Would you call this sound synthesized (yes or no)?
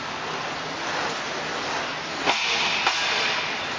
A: no